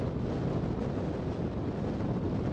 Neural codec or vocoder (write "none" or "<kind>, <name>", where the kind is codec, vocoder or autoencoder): none